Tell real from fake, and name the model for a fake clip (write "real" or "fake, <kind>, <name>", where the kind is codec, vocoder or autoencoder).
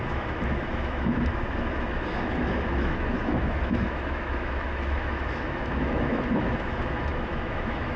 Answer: fake, autoencoder, DAC-VAE